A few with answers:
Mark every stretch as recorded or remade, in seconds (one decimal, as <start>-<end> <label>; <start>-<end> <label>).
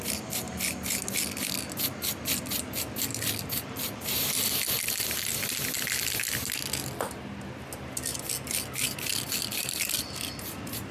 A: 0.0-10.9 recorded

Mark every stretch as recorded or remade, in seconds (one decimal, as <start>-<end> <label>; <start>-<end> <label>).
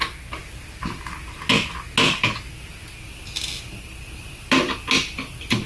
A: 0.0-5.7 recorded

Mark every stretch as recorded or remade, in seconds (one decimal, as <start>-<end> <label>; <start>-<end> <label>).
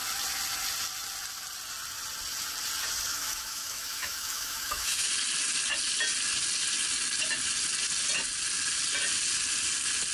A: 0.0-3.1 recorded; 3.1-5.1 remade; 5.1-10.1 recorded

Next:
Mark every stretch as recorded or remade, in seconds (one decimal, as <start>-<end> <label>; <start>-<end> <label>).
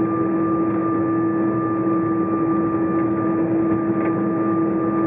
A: 0.0-5.1 recorded